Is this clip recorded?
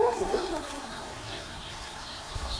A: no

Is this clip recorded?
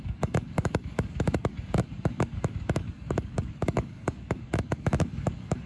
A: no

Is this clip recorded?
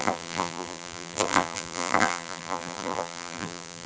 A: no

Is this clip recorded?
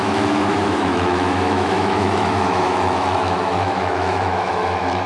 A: no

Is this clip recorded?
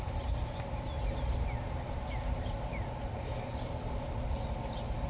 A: yes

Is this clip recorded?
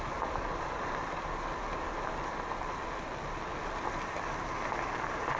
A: yes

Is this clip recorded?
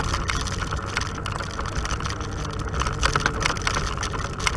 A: yes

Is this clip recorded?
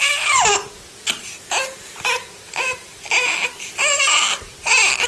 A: yes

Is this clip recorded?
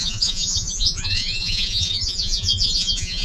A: no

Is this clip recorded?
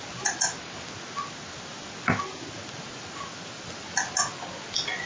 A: yes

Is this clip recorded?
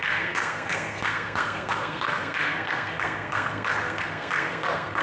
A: no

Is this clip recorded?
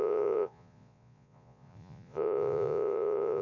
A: no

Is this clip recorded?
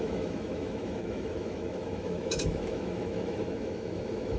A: no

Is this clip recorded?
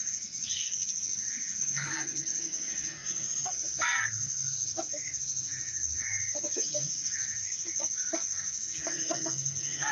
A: no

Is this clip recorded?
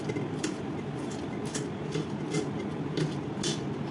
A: yes